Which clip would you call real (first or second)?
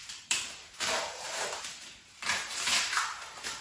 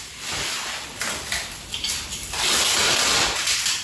second